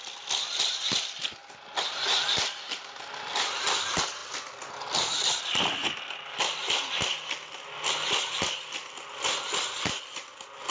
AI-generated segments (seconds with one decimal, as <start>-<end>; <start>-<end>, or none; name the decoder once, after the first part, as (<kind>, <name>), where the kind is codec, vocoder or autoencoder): 0.0-1.4 (vocoder, BigVGAN v2); 2.3-4.2; 7.9-10.7